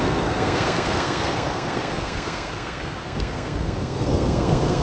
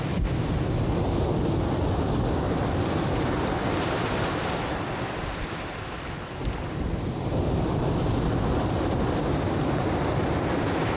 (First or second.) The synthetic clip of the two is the first